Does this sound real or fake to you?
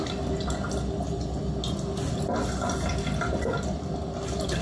real